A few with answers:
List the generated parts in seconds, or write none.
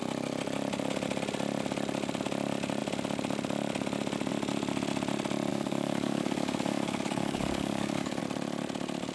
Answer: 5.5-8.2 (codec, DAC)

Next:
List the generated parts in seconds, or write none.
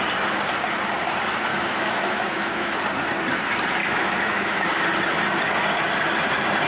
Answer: 1.5-2.8 (autoencoder, DAC-VAE); 3.8-4.6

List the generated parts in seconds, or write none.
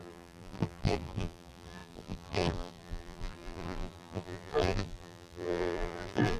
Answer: 0.0-6.4 (vocoder, BigVGAN v2)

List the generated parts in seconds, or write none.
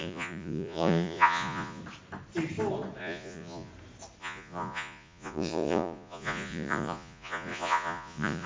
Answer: 0.0-1.8 (vocoder, Vocos); 3.0-3.7; 4.2-8.5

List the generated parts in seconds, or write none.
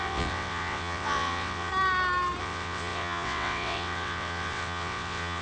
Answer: 0.0-1.7 (vocoder, WaveNeXt); 2.4-5.4